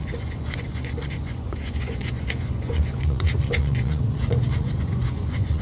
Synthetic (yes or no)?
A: yes